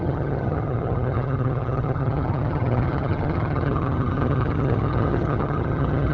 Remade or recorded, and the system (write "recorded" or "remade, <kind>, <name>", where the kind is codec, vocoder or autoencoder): remade, vocoder, HiFi-GAN